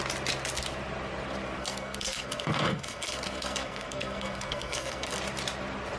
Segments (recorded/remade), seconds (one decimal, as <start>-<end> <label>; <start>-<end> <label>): 0.0-1.6 recorded; 1.6-5.2 remade; 5.2-6.0 recorded